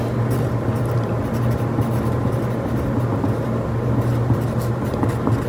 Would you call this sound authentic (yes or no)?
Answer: yes